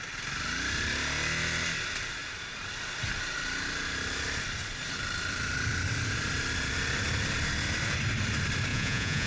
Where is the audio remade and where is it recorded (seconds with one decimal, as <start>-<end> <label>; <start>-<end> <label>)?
0.0-8.7 recorded; 8.7-9.3 remade

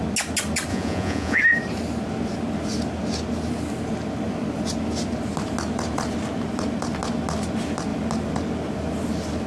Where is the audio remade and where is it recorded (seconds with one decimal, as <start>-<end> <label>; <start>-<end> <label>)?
0.0-0.7 recorded; 0.7-1.4 remade; 1.4-9.5 recorded

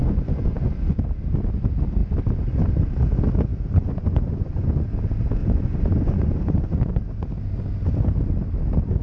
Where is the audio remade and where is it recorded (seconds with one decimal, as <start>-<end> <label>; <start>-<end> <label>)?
0.0-1.0 remade; 1.0-3.5 recorded; 3.5-4.9 remade; 4.9-5.4 recorded; 5.4-7.0 remade; 7.0-9.0 recorded